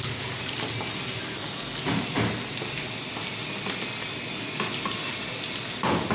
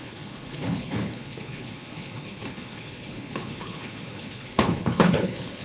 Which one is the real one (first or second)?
first